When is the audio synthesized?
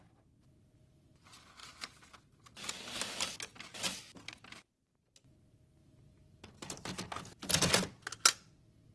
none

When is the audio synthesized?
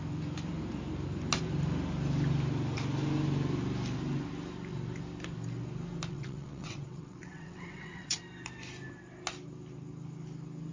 6.1-8.2